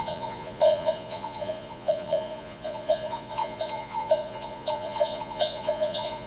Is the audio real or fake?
fake